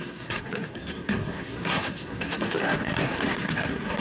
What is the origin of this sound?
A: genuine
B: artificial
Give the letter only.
B